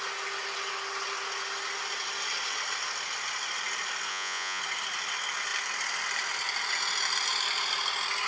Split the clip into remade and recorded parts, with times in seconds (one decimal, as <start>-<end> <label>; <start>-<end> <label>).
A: 0.0-4.1 recorded; 4.1-4.6 remade; 4.6-8.3 recorded